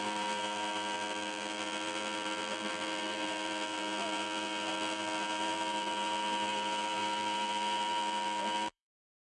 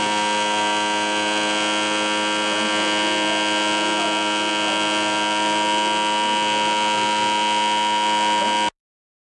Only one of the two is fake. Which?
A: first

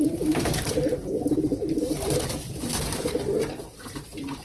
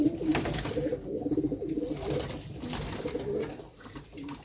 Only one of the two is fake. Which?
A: first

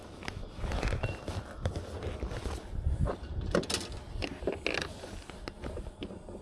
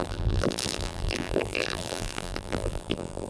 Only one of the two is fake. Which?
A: second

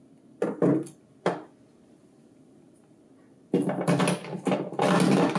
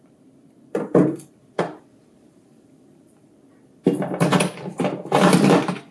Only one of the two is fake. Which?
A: second